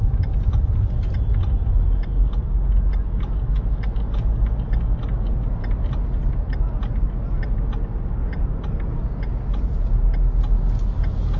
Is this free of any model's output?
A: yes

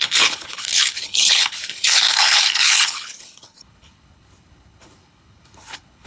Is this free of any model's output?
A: no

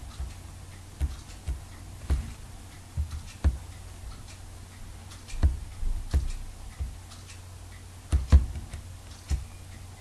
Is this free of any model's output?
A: yes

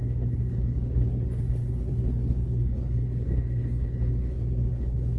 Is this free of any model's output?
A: no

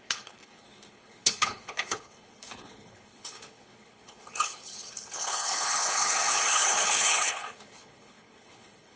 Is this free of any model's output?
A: no